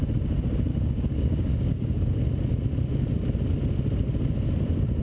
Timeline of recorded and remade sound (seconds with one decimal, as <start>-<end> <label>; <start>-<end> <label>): 0.0-0.7 recorded; 0.7-2.2 remade; 2.2-5.0 recorded